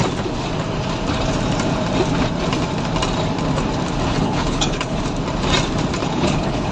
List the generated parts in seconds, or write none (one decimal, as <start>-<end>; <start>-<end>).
4.1-5.0; 6.0-6.7

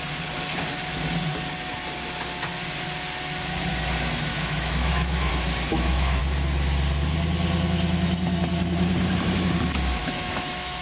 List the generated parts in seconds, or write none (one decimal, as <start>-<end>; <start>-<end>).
4.3-5.3; 5.7-6.2; 10.0-10.8

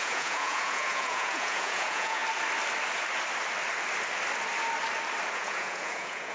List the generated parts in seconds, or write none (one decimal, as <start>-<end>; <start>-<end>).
0.0-2.2; 5.3-6.3

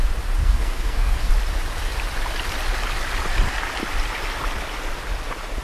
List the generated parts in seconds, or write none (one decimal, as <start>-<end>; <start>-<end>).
0.4-1.3

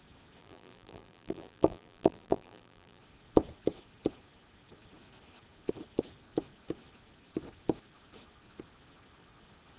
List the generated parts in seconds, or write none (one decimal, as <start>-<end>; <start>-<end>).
0.4-3.0

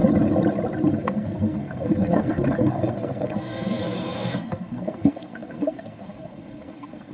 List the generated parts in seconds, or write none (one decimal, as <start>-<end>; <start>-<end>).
0.9-7.1